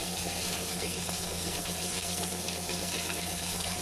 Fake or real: fake